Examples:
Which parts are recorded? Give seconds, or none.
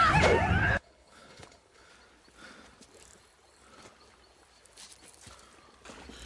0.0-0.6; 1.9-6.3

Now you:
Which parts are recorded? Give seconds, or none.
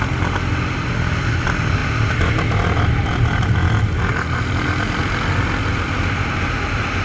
0.0-7.0